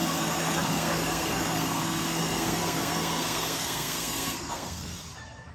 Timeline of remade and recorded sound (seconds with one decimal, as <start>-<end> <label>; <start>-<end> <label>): 0.0-4.9 remade; 4.9-5.5 recorded